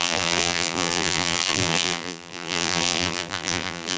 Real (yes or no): no